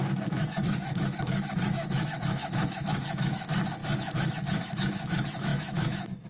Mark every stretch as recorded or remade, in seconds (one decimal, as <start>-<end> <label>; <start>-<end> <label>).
0.0-6.3 remade